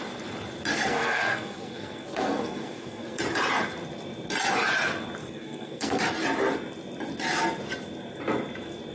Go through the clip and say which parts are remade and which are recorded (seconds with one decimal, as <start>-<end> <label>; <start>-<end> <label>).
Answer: 0.0-0.7 recorded; 0.7-3.2 remade; 3.2-5.2 recorded; 5.2-6.0 remade; 6.0-8.9 recorded